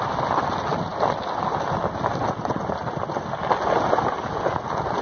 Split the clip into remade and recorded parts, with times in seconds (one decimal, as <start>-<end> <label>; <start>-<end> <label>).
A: 0.0-5.0 recorded